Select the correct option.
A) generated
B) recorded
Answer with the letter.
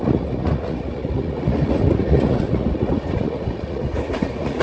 A